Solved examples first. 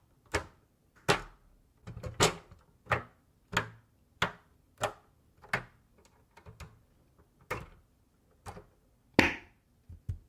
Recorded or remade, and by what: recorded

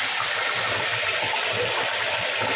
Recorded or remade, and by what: recorded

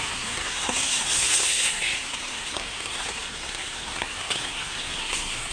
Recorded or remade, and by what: remade, codec, SNAC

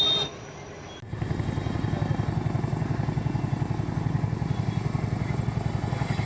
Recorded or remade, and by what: recorded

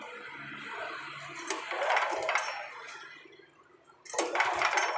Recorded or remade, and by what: recorded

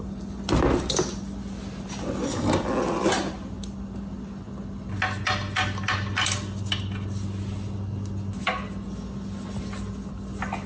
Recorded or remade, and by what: recorded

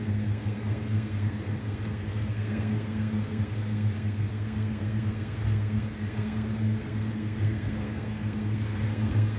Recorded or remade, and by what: remade, codec, SNAC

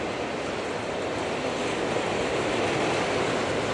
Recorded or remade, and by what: recorded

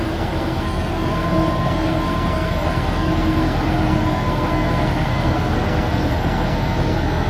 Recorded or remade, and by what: remade, codec, SNAC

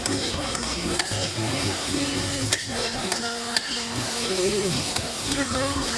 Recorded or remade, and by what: remade, codec, SNAC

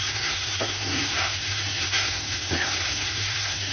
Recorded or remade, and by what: remade, codec, SNAC